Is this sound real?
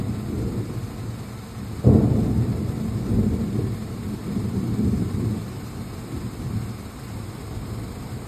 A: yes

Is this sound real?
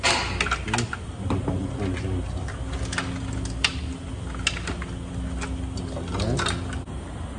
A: yes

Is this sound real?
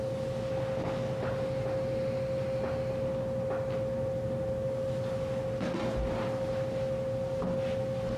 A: yes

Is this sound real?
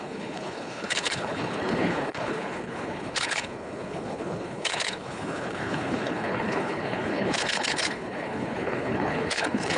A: no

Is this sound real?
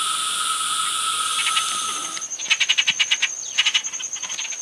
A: no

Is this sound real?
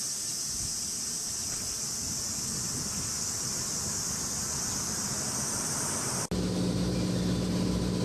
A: yes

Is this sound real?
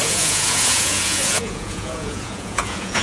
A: no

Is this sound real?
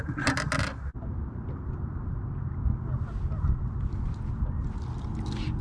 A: yes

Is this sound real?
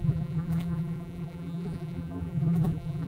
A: no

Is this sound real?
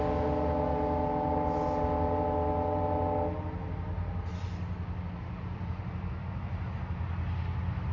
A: yes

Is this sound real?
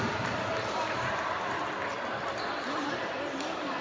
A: yes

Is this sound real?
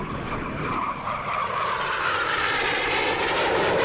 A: no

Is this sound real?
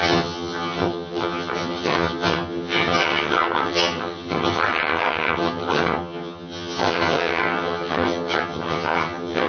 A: no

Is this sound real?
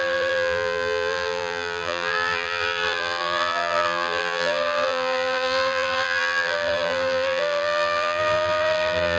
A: no